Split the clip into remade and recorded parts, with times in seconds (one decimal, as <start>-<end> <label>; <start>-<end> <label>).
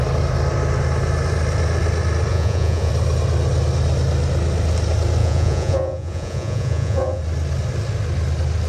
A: 0.0-2.3 recorded; 2.3-2.9 remade; 2.9-5.2 recorded; 5.2-7.2 remade; 7.2-8.7 recorded